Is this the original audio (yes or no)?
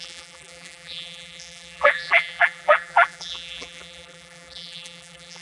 no